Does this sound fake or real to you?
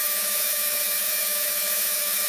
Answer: fake